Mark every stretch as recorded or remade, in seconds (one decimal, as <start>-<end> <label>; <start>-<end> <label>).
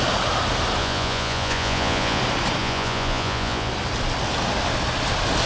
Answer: 0.0-0.8 recorded; 0.8-2.2 remade; 2.2-2.6 recorded; 2.6-3.7 remade; 3.7-5.5 recorded